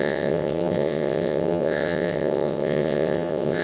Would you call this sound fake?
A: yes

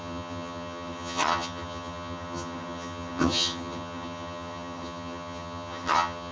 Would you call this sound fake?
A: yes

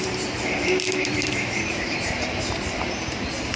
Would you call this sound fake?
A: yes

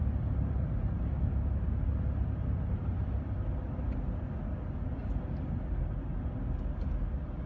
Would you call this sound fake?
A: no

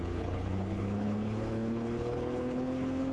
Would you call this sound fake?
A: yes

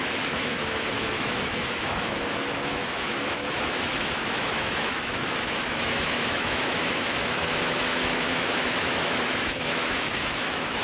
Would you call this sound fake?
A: yes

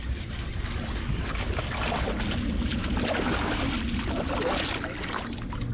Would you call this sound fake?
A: no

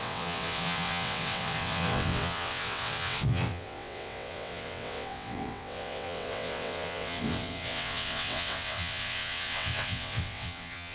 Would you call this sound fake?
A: yes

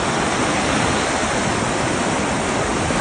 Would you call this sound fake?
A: yes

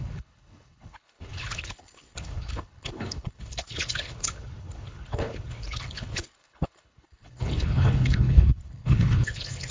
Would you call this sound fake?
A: yes